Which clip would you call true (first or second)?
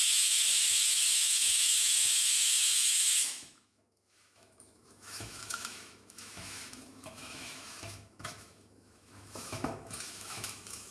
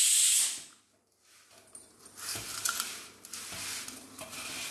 second